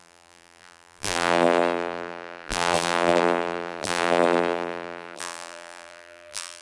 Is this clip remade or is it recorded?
remade